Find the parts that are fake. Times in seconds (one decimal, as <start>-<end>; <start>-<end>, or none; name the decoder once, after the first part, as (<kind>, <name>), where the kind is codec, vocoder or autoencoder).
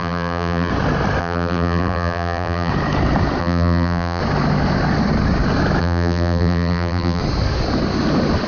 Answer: 0.0-0.7 (vocoder, BigVGAN v2); 1.2-2.7; 3.4-4.2; 5.8-7.2